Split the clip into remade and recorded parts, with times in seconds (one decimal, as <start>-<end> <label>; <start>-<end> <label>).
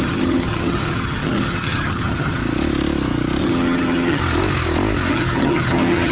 0.0-2.4 remade; 2.4-3.4 recorded; 3.4-4.2 remade; 4.2-5.1 recorded; 5.1-6.1 remade